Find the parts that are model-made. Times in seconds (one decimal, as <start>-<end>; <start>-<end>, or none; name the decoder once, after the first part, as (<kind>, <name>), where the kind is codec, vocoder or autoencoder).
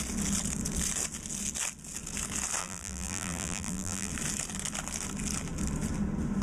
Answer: 2.6-4.1 (vocoder, BigVGAN v2)